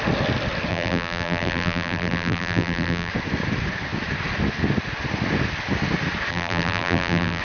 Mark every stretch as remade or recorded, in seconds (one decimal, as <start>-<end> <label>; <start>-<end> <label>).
0.0-0.7 recorded; 0.7-3.1 remade; 3.1-6.3 recorded; 6.3-7.4 remade

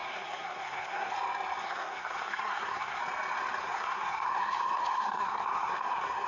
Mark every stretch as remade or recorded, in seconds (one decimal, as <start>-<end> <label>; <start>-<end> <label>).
0.0-1.1 remade; 1.1-1.6 recorded; 1.6-3.0 remade; 3.0-3.6 recorded; 3.6-6.3 remade

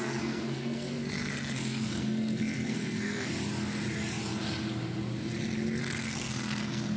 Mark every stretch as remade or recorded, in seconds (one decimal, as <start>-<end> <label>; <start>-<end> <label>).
0.0-3.3 remade; 3.3-5.8 recorded; 5.8-7.0 remade

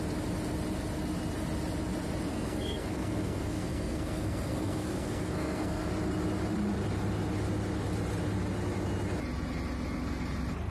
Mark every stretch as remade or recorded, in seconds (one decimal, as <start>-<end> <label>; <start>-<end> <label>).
0.0-2.3 recorded; 2.3-5.9 remade; 5.9-10.7 recorded

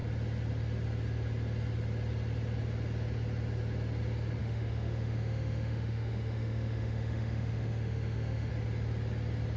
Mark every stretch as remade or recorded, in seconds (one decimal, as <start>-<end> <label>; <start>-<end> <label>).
0.0-4.4 recorded; 4.4-8.5 remade; 8.5-9.6 recorded

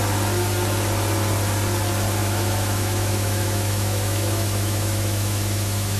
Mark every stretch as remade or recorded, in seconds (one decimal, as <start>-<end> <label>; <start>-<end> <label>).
0.0-2.2 recorded; 2.2-6.0 remade